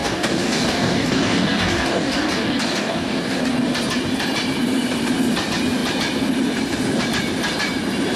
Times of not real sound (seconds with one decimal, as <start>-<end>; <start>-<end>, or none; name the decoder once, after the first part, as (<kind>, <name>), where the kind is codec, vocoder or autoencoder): 0.0-3.4 (codec, DAC)